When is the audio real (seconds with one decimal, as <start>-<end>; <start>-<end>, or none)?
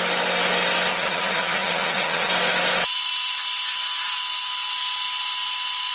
0.0-0.9; 2.3-5.9